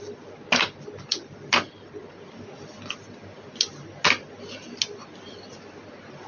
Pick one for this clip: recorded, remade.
recorded